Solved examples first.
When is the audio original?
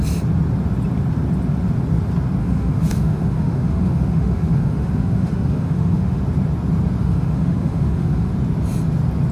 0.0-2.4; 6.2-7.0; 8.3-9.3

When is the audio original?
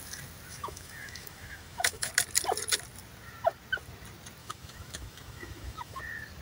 0.0-0.5; 2.1-4.4; 6.0-6.4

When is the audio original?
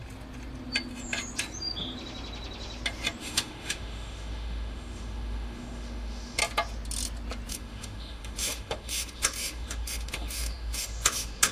0.0-3.2; 6.4-7.5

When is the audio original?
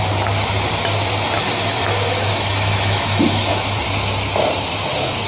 0.0-1.4; 3.9-5.3